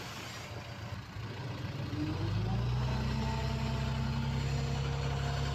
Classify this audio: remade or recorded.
recorded